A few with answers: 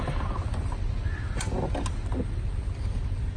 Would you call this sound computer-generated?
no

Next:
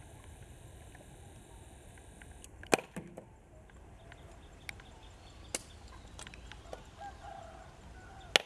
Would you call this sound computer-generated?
no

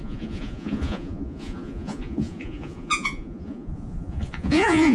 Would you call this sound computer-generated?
yes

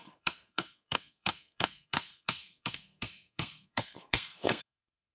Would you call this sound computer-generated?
yes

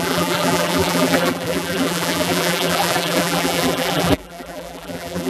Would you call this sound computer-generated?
yes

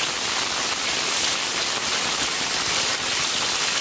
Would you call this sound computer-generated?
no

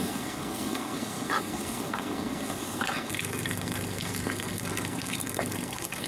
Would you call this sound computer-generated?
yes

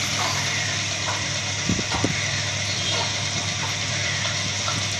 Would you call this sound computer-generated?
yes